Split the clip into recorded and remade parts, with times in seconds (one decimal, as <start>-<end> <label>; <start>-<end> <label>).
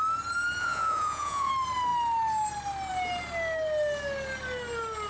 0.0-0.6 recorded; 0.6-1.5 remade; 1.5-5.1 recorded